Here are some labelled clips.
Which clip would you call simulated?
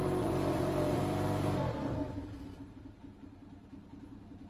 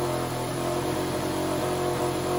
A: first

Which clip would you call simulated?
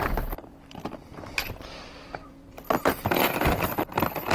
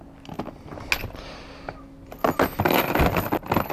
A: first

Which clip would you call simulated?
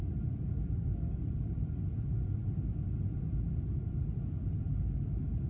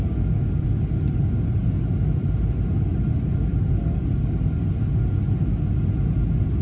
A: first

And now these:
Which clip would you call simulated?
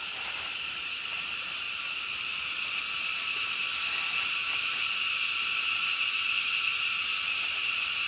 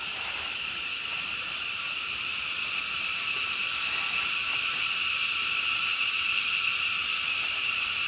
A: second